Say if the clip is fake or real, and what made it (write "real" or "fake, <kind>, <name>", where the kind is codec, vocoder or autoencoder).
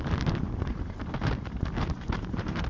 fake, vocoder, BigVGAN v2